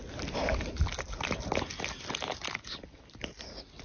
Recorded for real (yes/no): yes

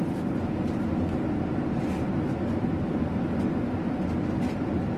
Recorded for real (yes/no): yes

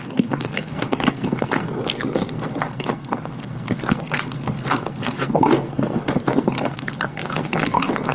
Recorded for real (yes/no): no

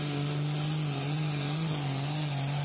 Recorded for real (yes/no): yes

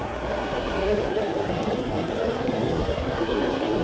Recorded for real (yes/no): no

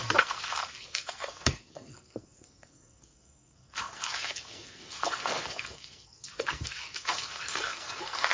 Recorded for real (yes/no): no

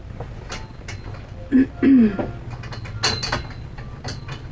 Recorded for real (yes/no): yes